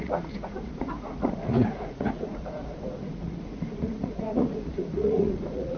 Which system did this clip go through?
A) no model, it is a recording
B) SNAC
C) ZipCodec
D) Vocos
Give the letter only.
D